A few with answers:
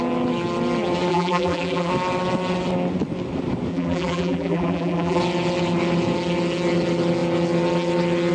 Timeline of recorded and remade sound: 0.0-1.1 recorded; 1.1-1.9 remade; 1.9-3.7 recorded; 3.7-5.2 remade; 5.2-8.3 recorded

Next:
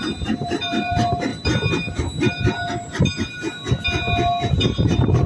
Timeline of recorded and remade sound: 0.0-1.3 remade; 1.3-4.5 recorded; 4.5-5.3 remade

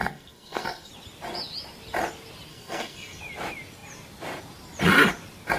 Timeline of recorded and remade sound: 0.0-0.9 remade; 0.9-2.5 recorded; 2.5-3.2 remade; 3.2-5.6 recorded

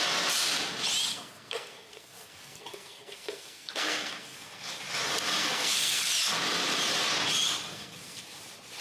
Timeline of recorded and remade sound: 0.0-1.1 recorded; 1.1-4.7 remade; 4.7-5.4 recorded; 5.4-6.1 remade; 6.1-7.7 recorded; 7.7-8.4 remade; 8.4-8.8 recorded